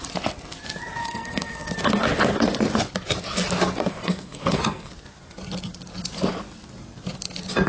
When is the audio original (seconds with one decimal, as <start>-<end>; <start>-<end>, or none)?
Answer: 0.0-1.0; 1.7-3.9; 4.9-7.7